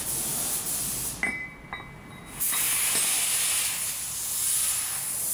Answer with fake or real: real